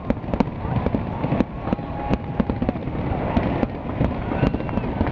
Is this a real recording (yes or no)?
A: yes